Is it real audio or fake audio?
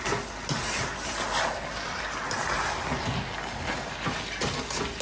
real